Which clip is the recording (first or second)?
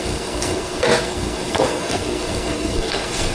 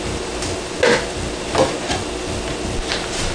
second